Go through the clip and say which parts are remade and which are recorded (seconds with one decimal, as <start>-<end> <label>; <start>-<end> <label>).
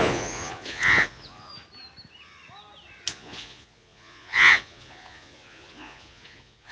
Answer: 0.0-1.5 remade; 1.5-3.1 recorded; 3.1-6.7 remade